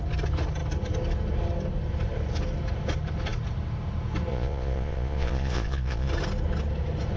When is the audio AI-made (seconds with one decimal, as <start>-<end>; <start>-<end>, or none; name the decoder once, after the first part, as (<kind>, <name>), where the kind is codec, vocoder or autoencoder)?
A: 4.3-6.1 (vocoder, Vocos)